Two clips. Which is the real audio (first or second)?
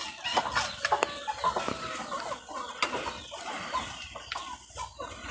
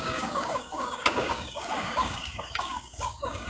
first